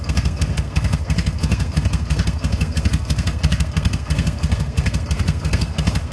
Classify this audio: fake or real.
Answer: fake